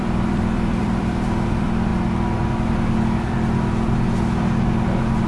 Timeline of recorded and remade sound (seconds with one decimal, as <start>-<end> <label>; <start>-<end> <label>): 0.0-1.9 remade; 1.9-5.3 recorded